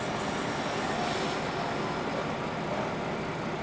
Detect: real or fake real